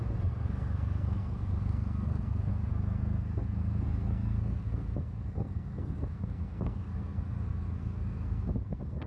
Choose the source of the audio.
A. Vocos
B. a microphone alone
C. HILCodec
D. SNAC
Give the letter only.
D